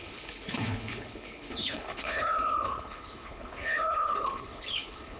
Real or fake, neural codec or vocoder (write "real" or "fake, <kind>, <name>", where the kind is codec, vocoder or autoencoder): fake, codec, HILCodec